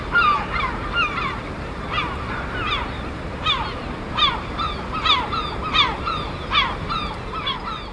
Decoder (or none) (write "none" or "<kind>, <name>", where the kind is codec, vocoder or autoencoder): none